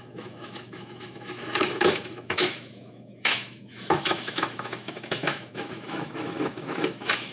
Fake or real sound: fake